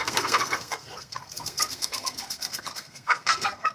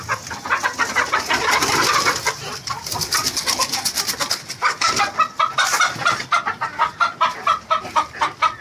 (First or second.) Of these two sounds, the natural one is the second